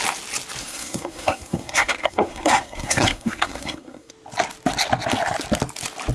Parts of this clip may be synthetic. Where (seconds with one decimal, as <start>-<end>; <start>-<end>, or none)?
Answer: 0.6-4.1